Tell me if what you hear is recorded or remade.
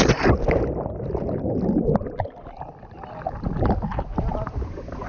recorded